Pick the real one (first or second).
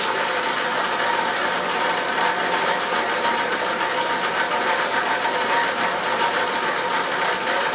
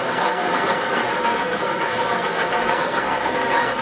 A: first